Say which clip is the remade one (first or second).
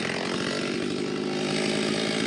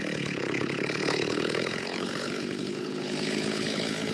second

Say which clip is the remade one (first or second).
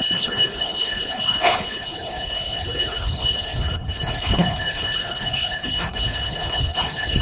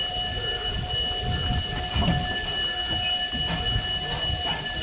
first